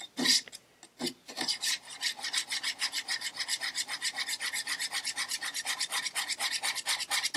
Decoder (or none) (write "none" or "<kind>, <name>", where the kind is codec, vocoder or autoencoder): none